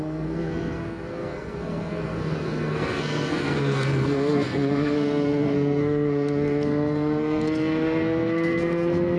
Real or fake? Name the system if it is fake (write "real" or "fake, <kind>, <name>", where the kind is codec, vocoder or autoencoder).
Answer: fake, codec, SNAC